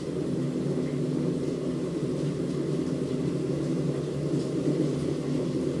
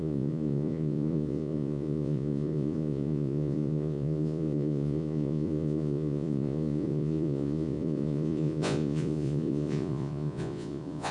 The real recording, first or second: first